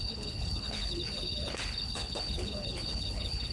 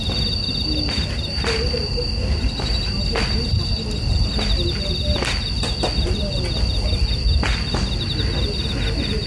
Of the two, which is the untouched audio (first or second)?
second